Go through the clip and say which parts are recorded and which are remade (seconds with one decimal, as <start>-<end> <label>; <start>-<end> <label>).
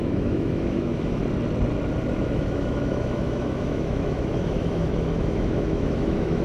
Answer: 0.0-1.2 remade; 1.2-2.1 recorded; 2.1-6.4 remade